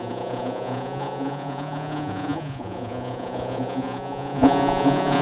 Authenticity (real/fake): fake